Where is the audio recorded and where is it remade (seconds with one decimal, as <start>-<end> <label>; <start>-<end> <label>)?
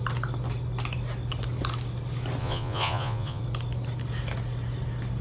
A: 0.0-2.4 recorded; 2.4-3.4 remade; 3.4-5.2 recorded